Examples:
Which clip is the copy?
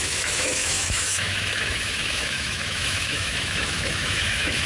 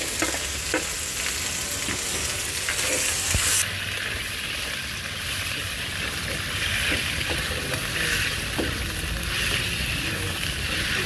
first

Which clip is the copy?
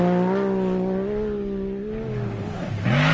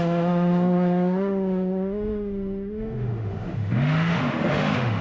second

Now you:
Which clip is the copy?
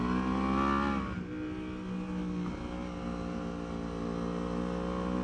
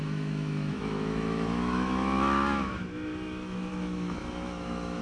second